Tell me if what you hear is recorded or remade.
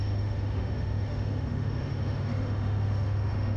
remade